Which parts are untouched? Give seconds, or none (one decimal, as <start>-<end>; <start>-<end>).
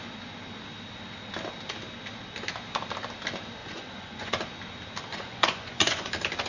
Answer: 0.0-3.6; 4.3-5.1; 6.1-6.5